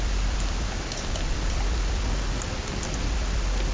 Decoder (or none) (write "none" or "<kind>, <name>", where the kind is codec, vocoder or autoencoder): none